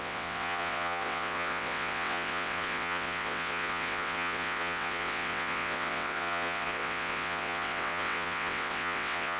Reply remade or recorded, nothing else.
remade